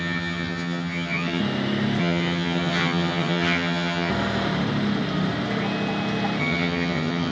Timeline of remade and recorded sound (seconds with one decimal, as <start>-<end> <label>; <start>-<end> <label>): 0.0-1.4 remade; 1.4-2.0 recorded; 2.0-4.1 remade; 4.1-6.4 recorded; 6.4-7.3 remade